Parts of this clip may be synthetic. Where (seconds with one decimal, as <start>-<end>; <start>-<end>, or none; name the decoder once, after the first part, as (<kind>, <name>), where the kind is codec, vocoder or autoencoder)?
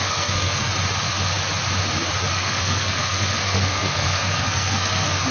0.0-0.7 (codec, SNAC); 2.3-5.3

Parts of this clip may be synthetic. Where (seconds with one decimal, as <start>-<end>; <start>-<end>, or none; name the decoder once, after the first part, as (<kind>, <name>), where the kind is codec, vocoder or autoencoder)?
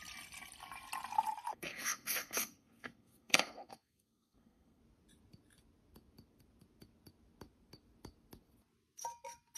1.5-4.8 (codec, SNAC)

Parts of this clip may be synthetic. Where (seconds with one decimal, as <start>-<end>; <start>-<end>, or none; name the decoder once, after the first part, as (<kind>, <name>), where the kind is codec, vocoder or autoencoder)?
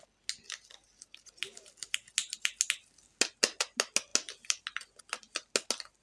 none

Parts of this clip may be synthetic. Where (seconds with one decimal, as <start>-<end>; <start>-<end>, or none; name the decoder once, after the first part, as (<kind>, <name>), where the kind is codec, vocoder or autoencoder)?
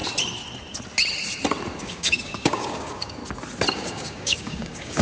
1.8-3.2 (codec, DAC); 3.7-5.0